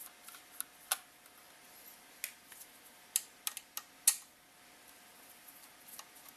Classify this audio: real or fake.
real